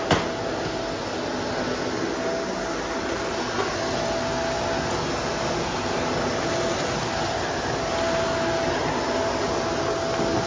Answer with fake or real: real